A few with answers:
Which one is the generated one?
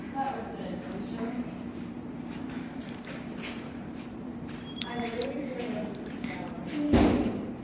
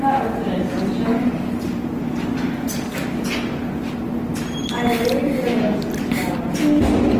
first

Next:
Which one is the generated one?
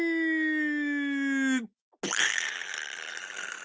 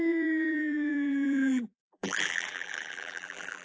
second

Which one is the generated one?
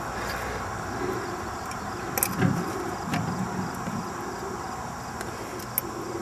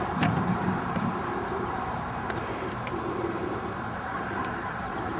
second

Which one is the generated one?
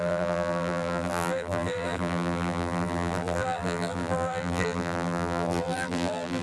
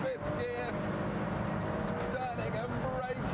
first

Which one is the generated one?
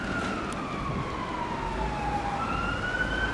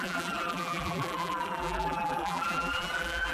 second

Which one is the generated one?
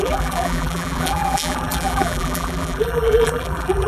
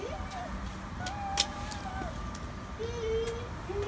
first